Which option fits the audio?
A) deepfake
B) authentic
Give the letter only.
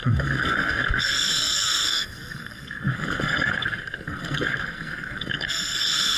A